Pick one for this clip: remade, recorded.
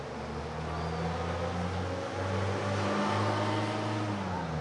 recorded